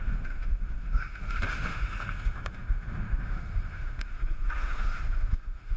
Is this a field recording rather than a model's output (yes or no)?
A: no